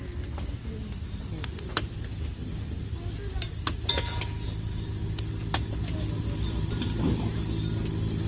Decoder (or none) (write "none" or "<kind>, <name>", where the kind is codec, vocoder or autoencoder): none